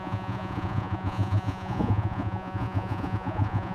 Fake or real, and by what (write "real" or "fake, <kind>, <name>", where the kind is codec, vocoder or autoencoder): fake, vocoder, Vocos